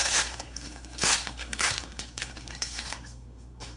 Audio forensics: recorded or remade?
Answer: remade